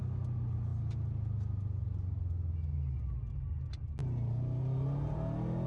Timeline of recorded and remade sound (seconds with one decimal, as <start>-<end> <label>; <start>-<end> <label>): 0.0-5.7 recorded